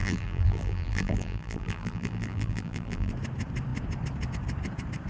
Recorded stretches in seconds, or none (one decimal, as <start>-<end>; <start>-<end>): 3.1-5.1